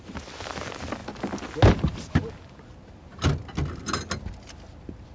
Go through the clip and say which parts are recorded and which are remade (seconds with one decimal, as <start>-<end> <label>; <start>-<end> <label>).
0.0-5.1 recorded